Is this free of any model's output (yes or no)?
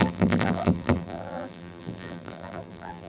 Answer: no